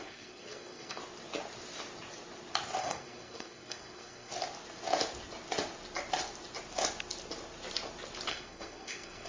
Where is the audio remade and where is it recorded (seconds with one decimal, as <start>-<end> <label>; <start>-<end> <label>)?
0.0-1.0 remade; 1.0-2.8 recorded; 2.8-4.3 remade; 4.3-8.3 recorded; 8.3-9.3 remade

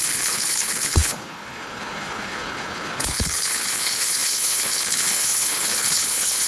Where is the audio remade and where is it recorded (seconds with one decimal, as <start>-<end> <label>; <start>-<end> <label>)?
0.0-6.5 remade

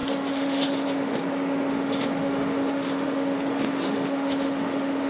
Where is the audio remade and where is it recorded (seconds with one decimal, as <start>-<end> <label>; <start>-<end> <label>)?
0.0-1.2 remade; 1.2-1.7 recorded; 1.7-5.1 remade

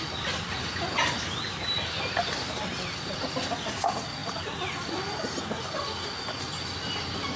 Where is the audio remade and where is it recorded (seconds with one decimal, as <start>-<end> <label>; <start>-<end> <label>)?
0.0-7.4 recorded

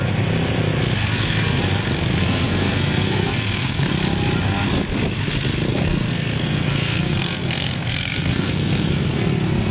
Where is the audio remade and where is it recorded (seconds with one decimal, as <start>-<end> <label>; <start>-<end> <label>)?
0.0-1.0 recorded; 1.0-1.6 remade; 1.6-2.2 recorded; 2.2-3.9 remade; 3.9-5.7 recorded; 5.7-9.7 remade

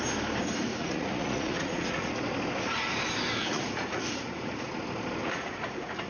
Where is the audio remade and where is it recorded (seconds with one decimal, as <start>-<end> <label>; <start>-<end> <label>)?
0.0-0.7 recorded; 0.7-2.1 remade; 2.1-3.3 recorded; 3.3-4.7 remade; 4.7-5.2 recorded; 5.2-6.1 remade

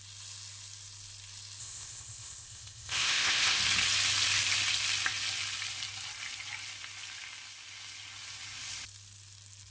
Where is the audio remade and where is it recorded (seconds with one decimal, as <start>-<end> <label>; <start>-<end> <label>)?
0.0-1.6 recorded; 1.6-3.6 remade; 3.6-9.7 recorded